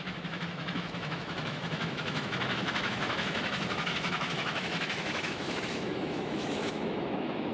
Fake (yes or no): yes